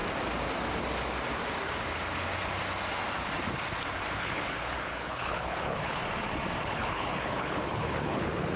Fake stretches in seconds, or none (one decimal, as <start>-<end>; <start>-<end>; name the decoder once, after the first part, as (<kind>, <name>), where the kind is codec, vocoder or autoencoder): 4.2-6.0 (codec, HILCodec); 6.6-8.6